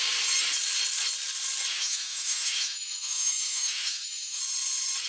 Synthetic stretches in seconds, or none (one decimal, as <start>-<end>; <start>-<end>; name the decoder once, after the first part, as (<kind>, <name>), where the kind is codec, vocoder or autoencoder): 1.7-4.4 (autoencoder, DAC-VAE)